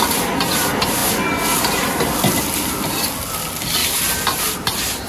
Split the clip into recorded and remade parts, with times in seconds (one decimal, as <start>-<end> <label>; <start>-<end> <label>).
0.0-3.8 recorded; 3.8-5.1 remade